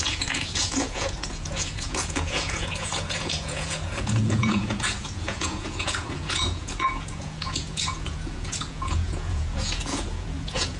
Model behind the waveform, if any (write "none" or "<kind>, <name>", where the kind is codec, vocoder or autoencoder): vocoder, Vocos